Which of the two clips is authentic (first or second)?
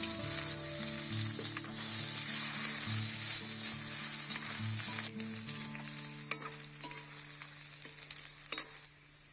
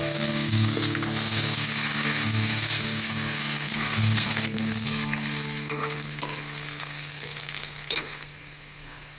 first